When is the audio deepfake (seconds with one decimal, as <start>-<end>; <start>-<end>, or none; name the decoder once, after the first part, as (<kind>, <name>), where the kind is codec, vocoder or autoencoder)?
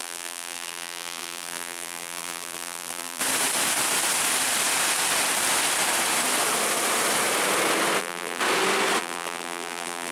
0.0-3.2 (vocoder, BigVGAN v2); 8.0-8.4; 9.0-10.1